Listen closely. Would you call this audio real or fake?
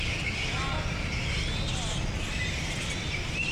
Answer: real